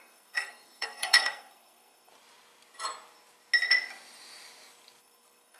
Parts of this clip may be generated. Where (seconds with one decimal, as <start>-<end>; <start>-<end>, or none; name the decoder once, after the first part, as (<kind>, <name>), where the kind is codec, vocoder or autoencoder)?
0.0-2.1 (codec, SNAC); 5.0-5.6